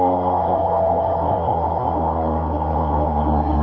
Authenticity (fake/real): fake